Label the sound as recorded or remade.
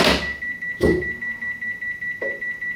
recorded